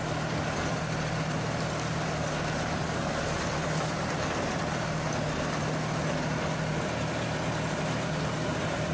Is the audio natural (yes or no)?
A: yes